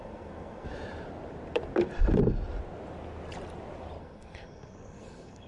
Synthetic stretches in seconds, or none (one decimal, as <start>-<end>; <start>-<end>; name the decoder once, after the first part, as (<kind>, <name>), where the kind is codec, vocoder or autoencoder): 0.0-0.7 (codec, SNAC); 4.0-5.5